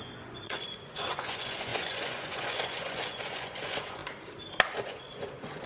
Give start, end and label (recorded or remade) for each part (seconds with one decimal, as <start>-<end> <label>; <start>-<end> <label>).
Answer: 0.0-4.0 remade; 4.0-4.8 recorded; 4.8-5.7 remade